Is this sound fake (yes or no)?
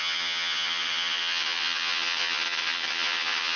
yes